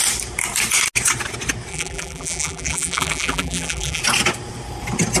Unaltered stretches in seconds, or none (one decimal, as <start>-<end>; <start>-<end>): 0.0-1.7; 4.0-5.2